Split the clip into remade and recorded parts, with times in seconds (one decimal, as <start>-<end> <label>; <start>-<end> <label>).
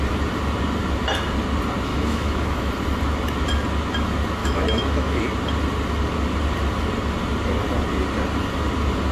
0.0-1.9 recorded; 1.9-2.7 remade; 2.7-4.4 recorded; 4.4-5.2 remade; 5.2-9.1 recorded